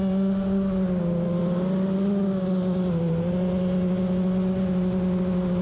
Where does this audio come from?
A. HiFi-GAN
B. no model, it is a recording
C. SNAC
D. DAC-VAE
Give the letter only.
B